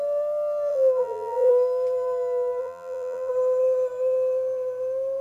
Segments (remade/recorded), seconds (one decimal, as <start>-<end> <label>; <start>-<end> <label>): 0.0-0.7 recorded; 0.7-1.5 remade; 1.5-2.6 recorded; 2.6-3.3 remade; 3.3-5.2 recorded

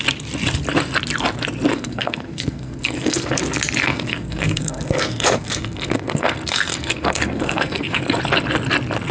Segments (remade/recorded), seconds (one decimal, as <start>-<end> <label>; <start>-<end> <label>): 0.0-1.7 recorded; 1.7-3.4 remade; 3.4-3.8 recorded; 3.8-8.0 remade; 8.0-9.1 recorded

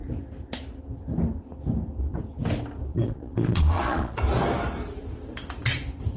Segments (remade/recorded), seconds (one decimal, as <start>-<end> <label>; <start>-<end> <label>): 0.0-2.9 recorded; 2.9-4.2 remade; 4.2-6.2 recorded